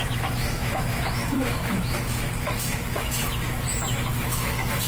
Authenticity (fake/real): fake